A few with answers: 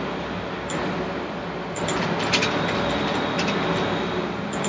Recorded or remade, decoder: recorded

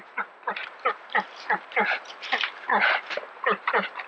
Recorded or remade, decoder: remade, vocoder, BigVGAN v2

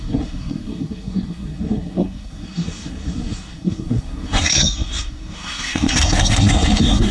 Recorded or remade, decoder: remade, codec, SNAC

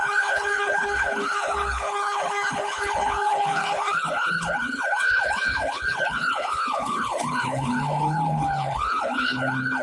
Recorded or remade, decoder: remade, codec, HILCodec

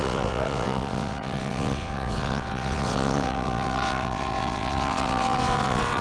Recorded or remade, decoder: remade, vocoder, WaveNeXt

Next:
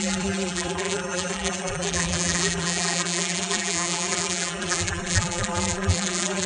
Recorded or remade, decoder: remade, vocoder, BigVGAN v2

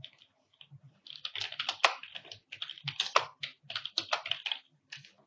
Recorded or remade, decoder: recorded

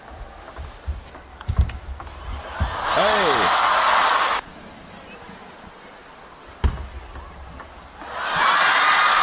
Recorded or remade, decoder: recorded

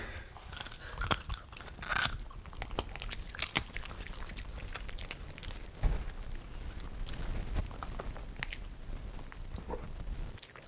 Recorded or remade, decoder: recorded